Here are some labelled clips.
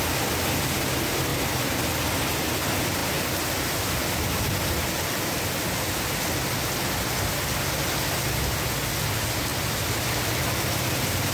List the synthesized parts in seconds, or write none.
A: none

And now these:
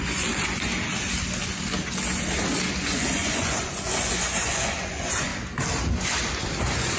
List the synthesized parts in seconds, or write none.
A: 0.0-0.7 (vocoder, Vocos); 2.8-5.3; 6.6-7.0